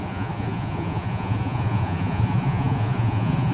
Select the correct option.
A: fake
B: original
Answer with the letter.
A